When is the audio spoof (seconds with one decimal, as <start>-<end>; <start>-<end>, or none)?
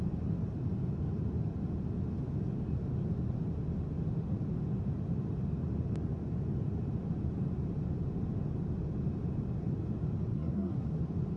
10.3-11.0